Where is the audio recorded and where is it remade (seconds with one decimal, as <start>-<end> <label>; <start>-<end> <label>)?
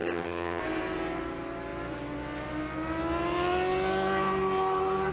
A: 0.0-0.6 remade; 0.6-5.1 recorded